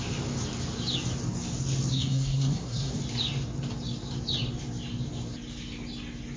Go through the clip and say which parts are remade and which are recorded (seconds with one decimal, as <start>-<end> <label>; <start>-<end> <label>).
0.0-1.9 recorded; 1.9-3.0 remade; 3.0-6.4 recorded

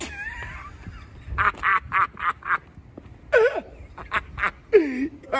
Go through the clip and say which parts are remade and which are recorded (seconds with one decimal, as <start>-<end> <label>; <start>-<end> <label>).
0.0-5.4 recorded